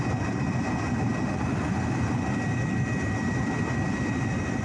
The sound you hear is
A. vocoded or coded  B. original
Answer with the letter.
B